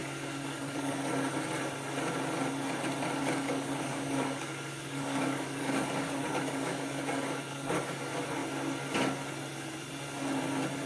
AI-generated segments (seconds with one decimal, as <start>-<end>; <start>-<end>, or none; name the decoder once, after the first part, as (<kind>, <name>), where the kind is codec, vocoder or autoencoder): 0.0-0.9 (codec, DAC); 3.2-8.0